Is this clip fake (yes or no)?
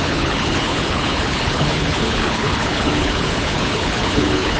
yes